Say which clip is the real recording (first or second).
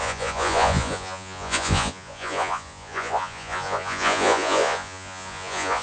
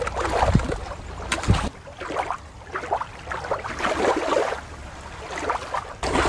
second